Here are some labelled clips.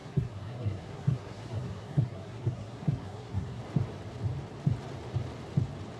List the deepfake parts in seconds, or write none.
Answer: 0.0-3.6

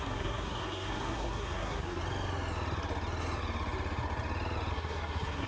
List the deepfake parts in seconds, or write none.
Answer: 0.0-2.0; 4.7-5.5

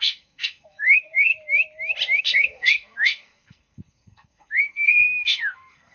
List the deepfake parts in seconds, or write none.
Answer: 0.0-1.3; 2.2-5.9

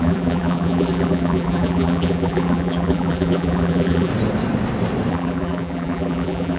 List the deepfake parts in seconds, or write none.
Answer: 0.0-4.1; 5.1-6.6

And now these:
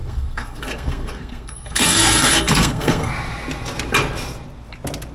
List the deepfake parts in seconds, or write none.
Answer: 0.0-3.1